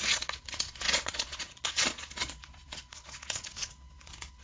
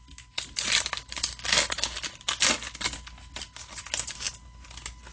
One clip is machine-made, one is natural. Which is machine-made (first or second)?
first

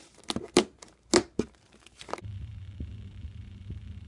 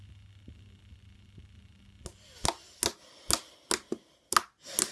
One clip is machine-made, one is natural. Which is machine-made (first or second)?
first